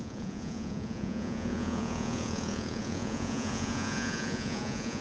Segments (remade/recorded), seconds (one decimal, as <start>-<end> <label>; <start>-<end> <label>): 0.0-5.0 remade

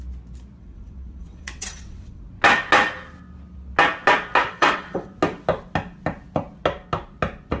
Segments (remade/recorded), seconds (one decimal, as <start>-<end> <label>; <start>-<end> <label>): 0.0-0.6 recorded; 0.6-2.2 remade; 2.2-4.4 recorded; 4.4-5.1 remade; 5.1-7.6 recorded